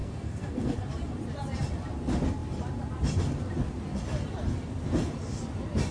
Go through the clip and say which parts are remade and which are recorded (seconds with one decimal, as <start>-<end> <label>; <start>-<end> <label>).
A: 0.0-0.8 remade; 0.8-5.9 recorded